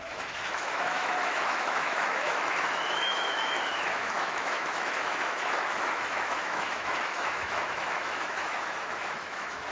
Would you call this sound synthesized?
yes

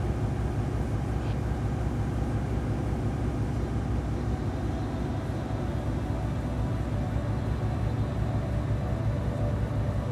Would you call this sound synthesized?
no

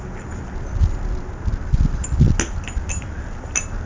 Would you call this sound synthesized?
no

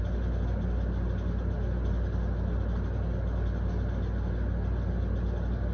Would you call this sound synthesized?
no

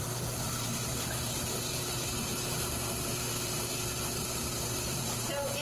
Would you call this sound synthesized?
yes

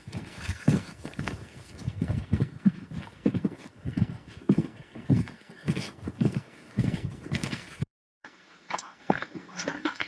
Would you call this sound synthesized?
yes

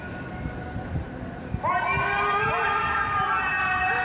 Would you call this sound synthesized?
no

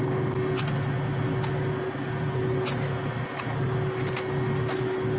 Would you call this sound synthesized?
no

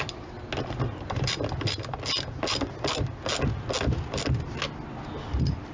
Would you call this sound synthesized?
no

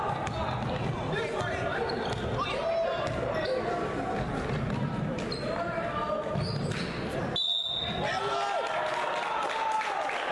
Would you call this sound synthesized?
no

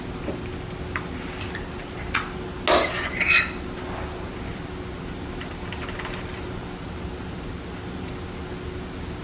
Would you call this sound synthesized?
no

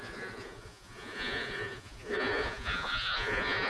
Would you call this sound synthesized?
yes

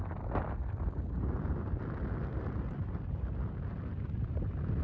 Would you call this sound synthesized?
no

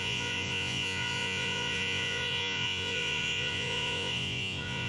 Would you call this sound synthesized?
yes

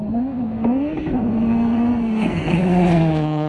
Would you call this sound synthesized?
yes